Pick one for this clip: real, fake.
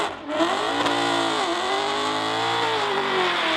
real